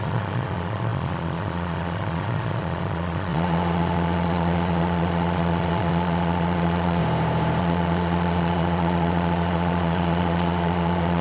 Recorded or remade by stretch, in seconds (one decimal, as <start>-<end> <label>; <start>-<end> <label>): 0.0-7.0 remade; 7.0-7.6 recorded; 7.6-11.2 remade